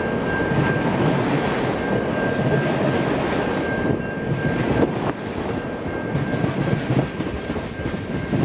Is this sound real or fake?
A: real